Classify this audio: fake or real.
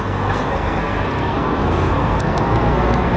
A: fake